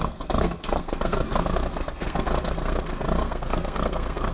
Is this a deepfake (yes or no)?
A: yes